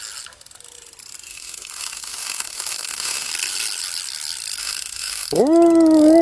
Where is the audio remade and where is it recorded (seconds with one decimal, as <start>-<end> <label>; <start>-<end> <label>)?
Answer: 0.0-1.3 recorded; 1.3-3.3 remade; 3.3-4.6 recorded; 4.6-5.4 remade; 5.4-6.2 recorded